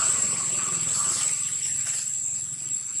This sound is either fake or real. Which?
real